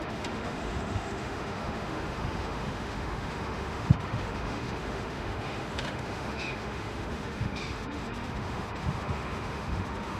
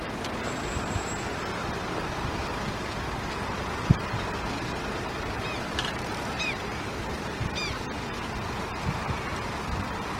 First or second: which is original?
second